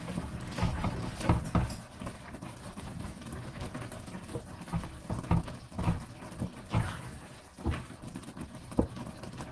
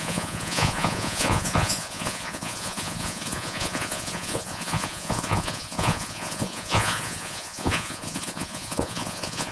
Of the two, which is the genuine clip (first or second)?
first